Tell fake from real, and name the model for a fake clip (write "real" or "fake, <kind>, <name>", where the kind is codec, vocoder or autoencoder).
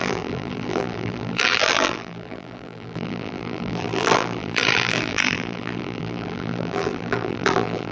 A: fake, vocoder, BigVGAN v2